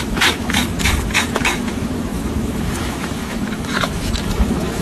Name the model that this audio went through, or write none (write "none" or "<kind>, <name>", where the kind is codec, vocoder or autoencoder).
autoencoder, DAC-VAE